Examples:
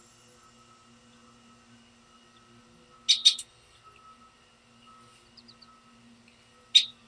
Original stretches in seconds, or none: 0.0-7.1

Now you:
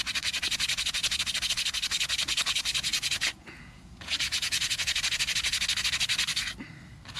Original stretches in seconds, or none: 0.0-2.9; 5.0-7.2